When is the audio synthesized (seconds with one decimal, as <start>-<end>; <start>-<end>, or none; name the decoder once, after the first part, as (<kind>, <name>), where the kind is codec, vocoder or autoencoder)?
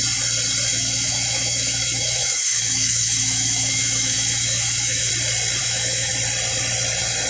0.7-5.1 (autoencoder, DAC-VAE); 5.6-6.1